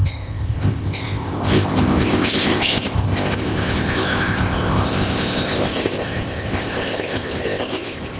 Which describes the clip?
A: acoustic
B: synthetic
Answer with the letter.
B